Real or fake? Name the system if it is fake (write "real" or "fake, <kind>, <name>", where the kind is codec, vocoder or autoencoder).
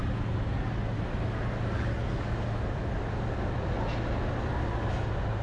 real